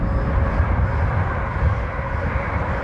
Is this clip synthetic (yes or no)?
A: no